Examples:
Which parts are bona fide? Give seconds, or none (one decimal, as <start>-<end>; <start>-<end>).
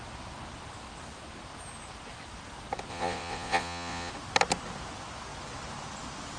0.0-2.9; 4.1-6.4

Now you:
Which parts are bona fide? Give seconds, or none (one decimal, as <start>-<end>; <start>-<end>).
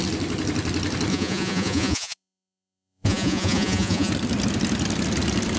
0.0-1.1; 4.1-5.6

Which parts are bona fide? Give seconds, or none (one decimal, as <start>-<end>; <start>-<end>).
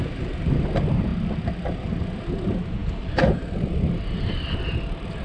0.0-5.2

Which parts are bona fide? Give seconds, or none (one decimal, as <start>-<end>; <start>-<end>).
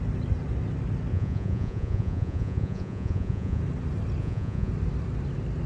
0.0-1.1; 3.6-4.2; 4.7-5.7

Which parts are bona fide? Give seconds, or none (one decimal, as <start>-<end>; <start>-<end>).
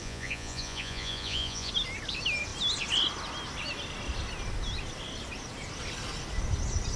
1.7-7.0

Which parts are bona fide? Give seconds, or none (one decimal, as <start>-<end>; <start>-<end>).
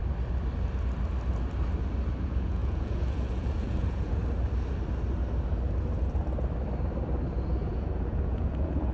0.0-2.2; 4.2-7.7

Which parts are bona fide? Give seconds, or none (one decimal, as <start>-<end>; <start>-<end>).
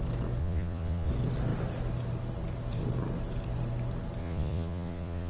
0.0-0.4; 1.1-4.2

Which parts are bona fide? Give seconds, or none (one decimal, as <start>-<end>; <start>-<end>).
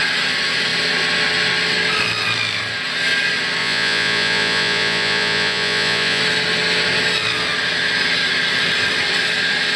0.0-3.6; 6.2-9.8